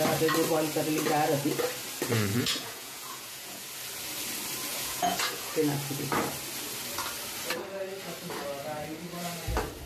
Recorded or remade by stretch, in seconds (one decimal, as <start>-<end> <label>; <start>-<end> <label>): 0.0-2.3 recorded; 2.3-3.6 remade; 3.6-4.7 recorded; 4.7-5.5 remade; 5.5-9.9 recorded